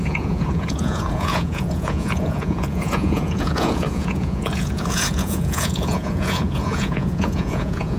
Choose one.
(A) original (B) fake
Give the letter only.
B